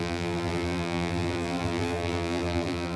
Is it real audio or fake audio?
fake